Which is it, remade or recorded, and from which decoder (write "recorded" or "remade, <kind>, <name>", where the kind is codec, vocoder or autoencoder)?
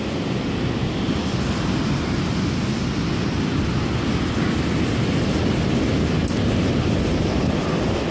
recorded